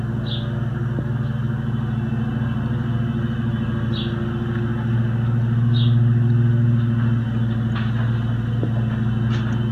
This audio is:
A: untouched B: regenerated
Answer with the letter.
A